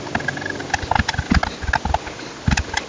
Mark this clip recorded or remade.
recorded